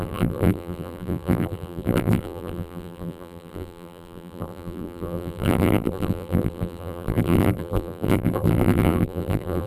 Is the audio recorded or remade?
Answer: remade